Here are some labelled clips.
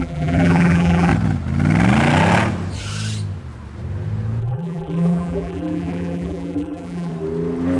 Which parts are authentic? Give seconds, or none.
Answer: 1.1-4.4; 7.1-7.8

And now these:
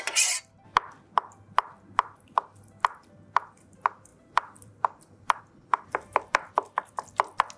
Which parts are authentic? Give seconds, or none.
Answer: 0.0-4.1; 5.4-7.6

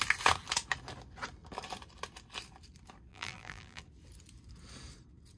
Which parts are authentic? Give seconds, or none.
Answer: 0.0-3.1; 3.8-5.4